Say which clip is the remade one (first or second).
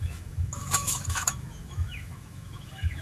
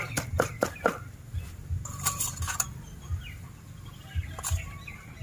first